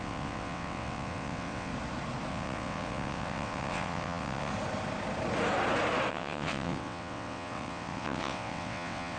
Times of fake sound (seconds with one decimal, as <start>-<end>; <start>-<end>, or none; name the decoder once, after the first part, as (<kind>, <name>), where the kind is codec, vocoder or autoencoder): 0.0-1.7 (vocoder, WaveNeXt); 2.3-4.5; 6.1-9.2